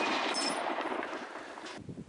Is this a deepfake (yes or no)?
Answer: yes